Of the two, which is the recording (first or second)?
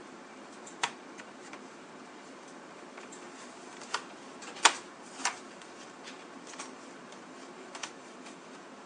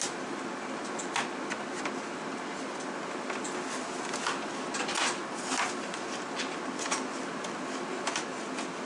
second